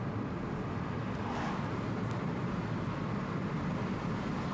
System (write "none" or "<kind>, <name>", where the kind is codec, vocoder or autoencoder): none